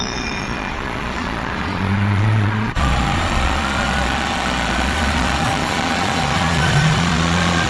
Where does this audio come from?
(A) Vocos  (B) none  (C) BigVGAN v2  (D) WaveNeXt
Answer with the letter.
A